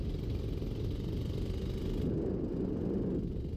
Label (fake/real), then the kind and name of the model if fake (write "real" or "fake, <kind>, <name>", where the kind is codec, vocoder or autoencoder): real